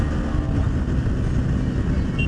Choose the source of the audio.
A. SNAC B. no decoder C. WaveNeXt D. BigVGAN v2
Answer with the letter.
B